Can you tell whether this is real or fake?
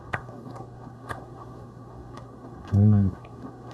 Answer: fake